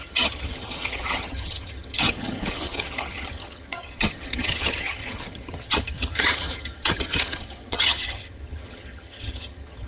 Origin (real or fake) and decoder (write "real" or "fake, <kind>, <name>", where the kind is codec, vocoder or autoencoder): fake, vocoder, HiFi-GAN